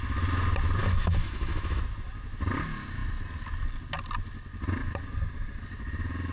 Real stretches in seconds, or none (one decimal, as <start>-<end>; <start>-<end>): 0.0-0.8; 1.8-6.3